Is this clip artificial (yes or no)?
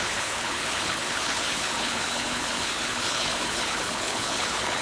yes